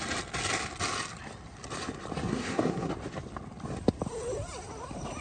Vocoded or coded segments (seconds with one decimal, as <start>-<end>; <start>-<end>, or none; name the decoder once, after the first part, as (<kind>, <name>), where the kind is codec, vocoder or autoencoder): 2.3-2.9 (codec, SNAC)